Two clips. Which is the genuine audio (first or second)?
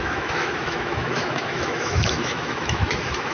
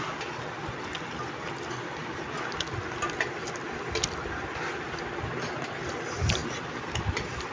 second